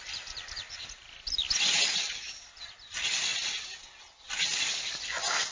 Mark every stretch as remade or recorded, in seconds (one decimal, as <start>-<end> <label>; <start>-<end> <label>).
0.0-5.5 recorded